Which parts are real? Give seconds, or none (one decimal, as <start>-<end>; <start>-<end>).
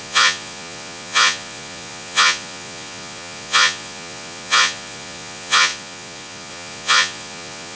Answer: none